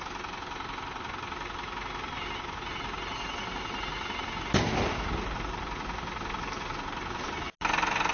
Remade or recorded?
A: recorded